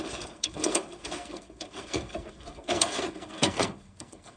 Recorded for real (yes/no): no